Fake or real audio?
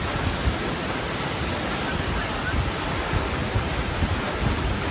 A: real